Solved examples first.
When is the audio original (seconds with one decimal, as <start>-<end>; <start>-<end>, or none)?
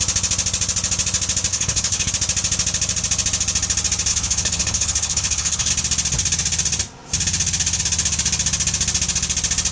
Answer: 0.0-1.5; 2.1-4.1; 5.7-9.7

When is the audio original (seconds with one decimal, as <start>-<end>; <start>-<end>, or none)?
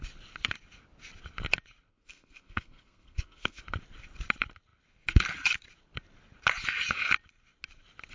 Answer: 0.0-1.9; 3.6-8.1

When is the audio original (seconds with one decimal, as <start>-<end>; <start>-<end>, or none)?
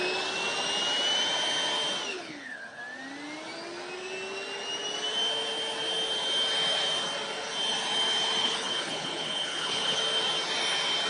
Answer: 0.0-2.1; 2.8-8.4; 10.0-11.1